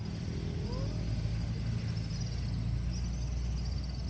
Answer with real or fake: real